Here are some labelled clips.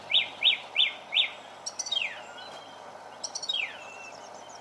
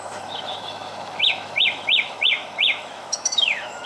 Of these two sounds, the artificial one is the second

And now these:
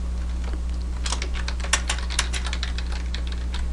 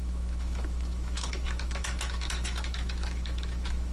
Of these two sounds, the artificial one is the second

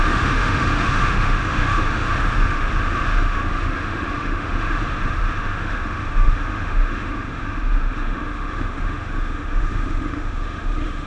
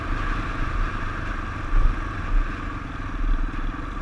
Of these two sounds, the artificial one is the first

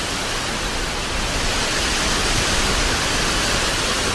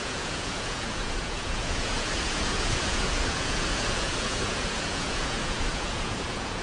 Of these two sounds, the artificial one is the second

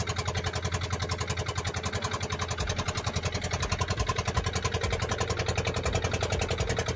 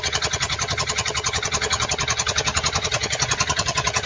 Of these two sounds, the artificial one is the second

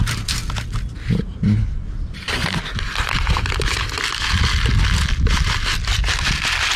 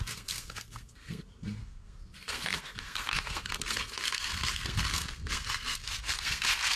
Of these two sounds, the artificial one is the second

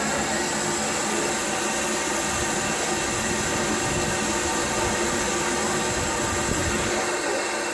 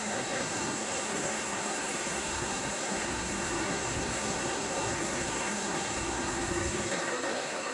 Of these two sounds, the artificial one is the second